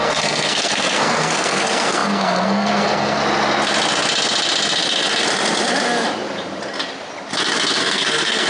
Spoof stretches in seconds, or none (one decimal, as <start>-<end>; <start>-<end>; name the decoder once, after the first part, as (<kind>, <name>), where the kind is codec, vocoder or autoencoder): 0.0-3.2 (codec, SNAC); 7.8-8.5